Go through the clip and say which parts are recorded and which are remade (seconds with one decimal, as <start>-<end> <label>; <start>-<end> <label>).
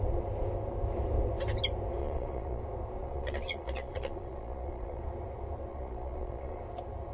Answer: 0.0-2.0 recorded; 2.0-2.6 remade; 2.6-3.0 recorded; 3.0-5.0 remade; 5.0-5.7 recorded; 5.7-6.6 remade; 6.6-7.1 recorded